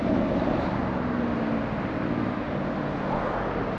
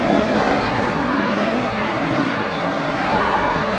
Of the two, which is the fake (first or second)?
second